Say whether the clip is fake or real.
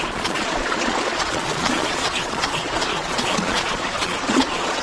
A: fake